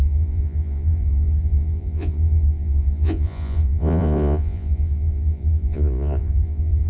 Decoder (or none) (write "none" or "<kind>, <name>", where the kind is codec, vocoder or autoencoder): vocoder, Vocos